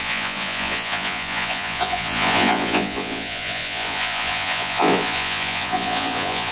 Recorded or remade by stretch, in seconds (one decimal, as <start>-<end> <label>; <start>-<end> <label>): 0.0-6.5 remade